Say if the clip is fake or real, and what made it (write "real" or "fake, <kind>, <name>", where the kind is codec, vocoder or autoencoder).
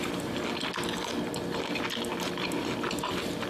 real